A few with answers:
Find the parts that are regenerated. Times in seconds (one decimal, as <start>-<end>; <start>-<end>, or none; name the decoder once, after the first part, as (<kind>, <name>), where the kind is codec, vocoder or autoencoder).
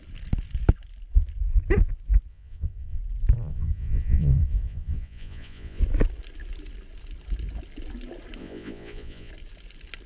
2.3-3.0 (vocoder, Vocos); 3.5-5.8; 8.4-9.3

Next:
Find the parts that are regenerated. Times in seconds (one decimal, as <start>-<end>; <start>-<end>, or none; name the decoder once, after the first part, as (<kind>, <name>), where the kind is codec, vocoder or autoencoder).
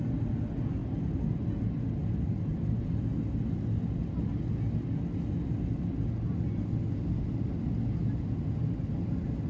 none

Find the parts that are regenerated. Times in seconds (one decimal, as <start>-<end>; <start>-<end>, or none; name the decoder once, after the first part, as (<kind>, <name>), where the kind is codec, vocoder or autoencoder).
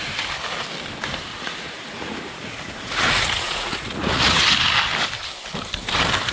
1.3-4.5 (vocoder, Vocos)